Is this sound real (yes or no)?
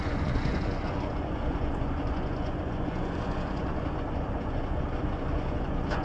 no